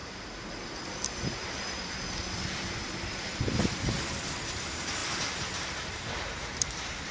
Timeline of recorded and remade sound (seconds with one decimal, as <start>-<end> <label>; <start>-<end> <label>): 0.0-7.1 recorded